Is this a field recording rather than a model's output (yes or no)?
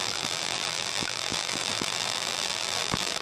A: no